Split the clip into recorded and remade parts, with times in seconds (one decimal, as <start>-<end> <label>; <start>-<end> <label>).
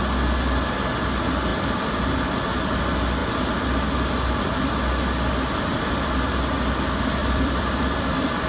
0.0-1.5 recorded; 1.5-2.4 remade; 2.4-3.2 recorded; 3.2-4.7 remade; 4.7-7.2 recorded; 7.2-8.5 remade